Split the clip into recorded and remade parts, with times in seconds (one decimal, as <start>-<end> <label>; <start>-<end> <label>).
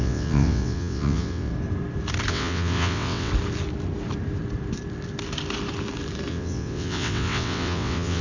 0.0-1.5 remade; 1.5-2.3 recorded; 2.3-3.3 remade; 3.3-6.3 recorded; 6.3-8.2 remade